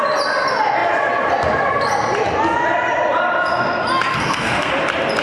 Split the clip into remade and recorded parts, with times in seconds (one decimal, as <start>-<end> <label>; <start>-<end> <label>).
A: 0.0-4.1 recorded; 4.1-4.7 remade; 4.7-5.2 recorded